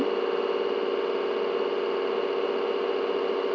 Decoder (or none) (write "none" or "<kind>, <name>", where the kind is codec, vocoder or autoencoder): none